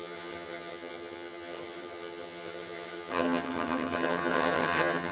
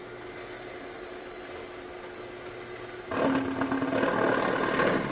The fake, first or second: first